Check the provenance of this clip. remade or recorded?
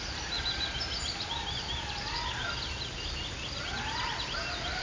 recorded